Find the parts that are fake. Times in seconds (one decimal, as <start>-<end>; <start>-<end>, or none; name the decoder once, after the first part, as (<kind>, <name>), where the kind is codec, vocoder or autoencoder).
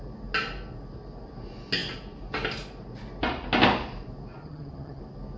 4.4-5.0 (vocoder, HiFi-GAN)